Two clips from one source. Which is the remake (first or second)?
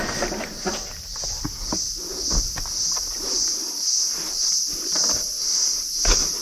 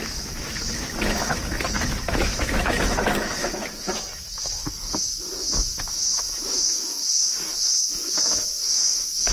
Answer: second